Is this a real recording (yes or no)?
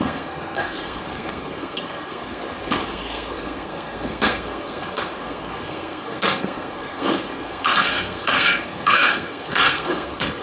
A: no